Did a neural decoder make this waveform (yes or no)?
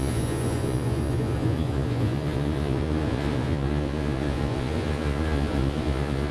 yes